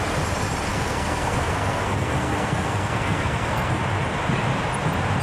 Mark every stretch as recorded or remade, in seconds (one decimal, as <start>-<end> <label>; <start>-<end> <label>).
0.0-0.7 recorded; 0.7-3.8 remade; 3.8-5.2 recorded